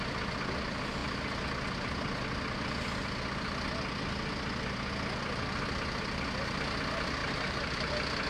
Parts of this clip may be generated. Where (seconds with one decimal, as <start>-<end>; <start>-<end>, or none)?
7.2-7.9